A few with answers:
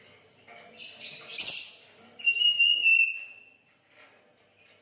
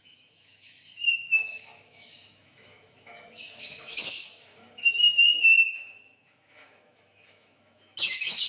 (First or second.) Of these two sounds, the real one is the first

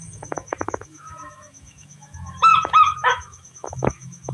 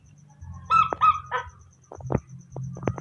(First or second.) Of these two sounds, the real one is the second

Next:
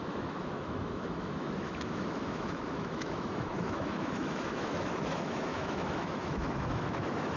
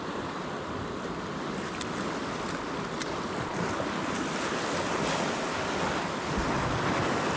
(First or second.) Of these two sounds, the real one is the second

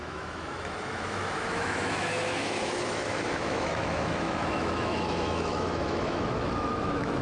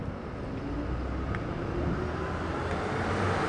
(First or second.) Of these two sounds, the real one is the second